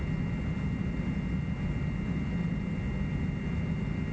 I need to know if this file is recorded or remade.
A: recorded